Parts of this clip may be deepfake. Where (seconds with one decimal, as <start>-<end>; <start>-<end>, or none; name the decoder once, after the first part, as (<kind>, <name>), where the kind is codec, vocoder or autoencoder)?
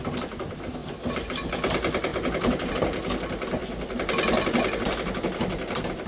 0.8-1.5 (vocoder, BigVGAN v2); 2.1-2.7